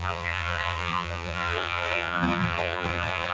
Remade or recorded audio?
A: remade